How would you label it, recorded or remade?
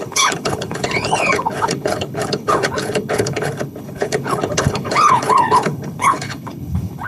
remade